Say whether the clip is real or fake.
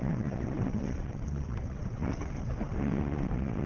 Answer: fake